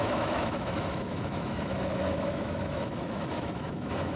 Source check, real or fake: fake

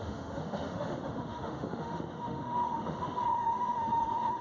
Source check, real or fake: fake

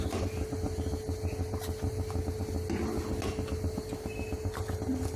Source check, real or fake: real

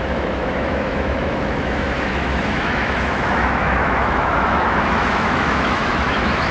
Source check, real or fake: fake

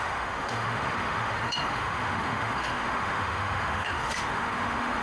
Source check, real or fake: fake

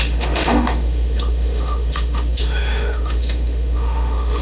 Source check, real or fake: fake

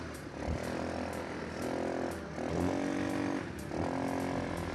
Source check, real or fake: real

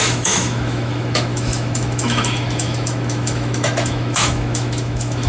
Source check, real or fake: fake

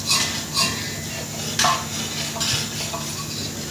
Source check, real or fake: real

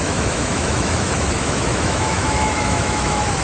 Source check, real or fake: fake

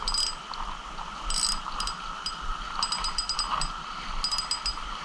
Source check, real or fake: real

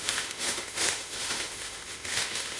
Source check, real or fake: fake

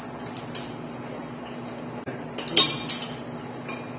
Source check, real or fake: real